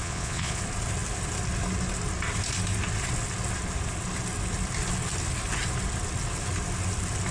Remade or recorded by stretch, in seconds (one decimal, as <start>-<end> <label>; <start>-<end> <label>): 0.0-0.6 remade; 0.6-7.3 recorded